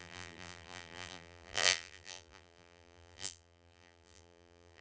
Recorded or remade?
remade